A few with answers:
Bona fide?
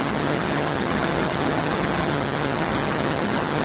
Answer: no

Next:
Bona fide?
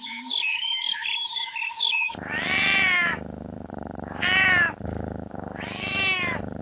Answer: no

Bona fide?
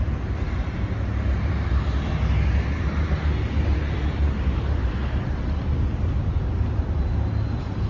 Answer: yes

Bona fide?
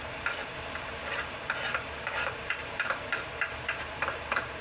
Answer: no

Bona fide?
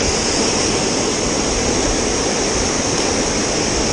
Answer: yes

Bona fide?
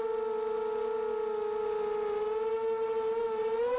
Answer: yes